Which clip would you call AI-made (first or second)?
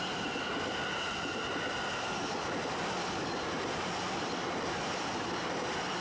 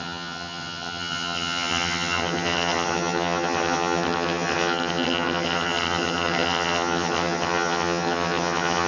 second